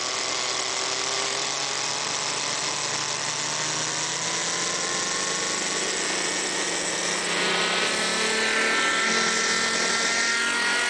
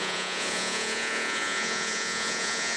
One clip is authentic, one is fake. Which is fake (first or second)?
second